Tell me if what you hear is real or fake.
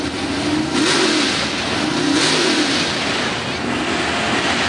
real